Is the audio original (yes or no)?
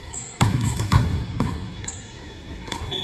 no